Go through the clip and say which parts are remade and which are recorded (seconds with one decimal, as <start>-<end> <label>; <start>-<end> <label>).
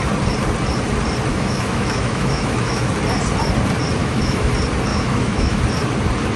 0.0-1.3 recorded; 1.3-2.9 remade; 2.9-4.0 recorded; 4.0-4.5 remade; 4.5-4.9 recorded; 4.9-5.6 remade; 5.6-6.4 recorded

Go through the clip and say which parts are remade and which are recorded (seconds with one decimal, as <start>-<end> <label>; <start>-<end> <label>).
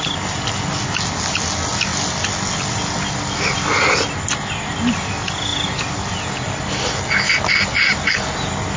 0.0-8.8 recorded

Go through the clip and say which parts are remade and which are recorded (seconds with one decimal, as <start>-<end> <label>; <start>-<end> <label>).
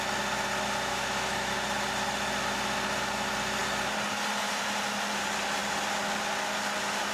0.0-0.9 recorded; 0.9-1.5 remade; 1.5-7.1 recorded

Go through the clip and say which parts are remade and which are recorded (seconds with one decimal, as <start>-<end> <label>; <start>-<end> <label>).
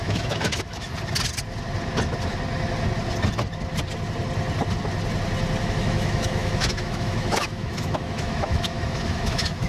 0.0-0.9 remade; 0.9-5.6 recorded; 5.6-9.7 remade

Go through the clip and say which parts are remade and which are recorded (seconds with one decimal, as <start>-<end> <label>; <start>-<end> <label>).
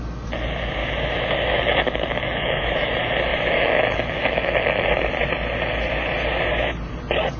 0.0-0.8 recorded; 0.8-2.9 remade; 2.9-3.3 recorded; 3.3-5.1 remade; 5.1-7.4 recorded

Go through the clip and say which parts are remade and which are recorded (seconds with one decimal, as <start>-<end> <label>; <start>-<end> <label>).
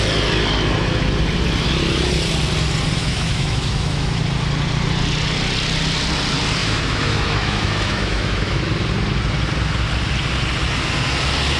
0.0-3.0 recorded; 3.0-4.2 remade; 4.2-6.6 recorded; 6.6-8.6 remade; 8.6-11.6 recorded